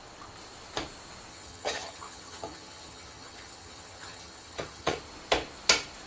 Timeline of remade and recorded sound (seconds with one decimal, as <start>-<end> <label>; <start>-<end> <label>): 0.0-1.3 recorded; 1.3-5.0 remade; 5.0-6.1 recorded